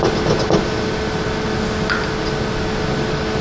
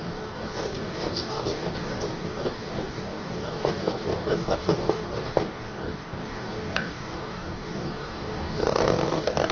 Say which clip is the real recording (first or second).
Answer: first